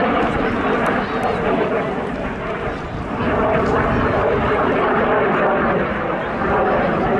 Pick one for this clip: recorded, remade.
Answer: recorded